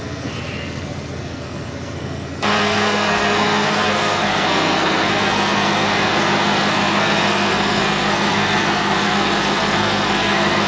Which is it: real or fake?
fake